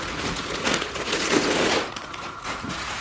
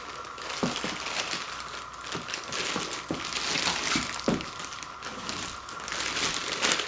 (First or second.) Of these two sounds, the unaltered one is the second